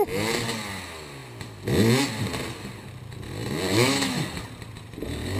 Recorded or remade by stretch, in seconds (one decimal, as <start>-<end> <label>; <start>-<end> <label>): 0.0-3.7 recorded; 3.7-4.2 remade; 4.2-5.4 recorded